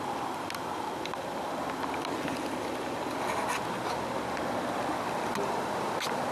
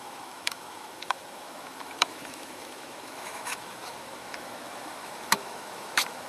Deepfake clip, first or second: second